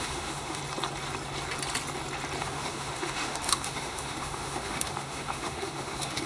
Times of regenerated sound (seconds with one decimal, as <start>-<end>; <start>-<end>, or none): 0.0-0.6; 2.4-6.3